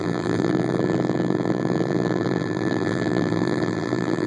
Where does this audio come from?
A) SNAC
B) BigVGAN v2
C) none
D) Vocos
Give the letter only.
B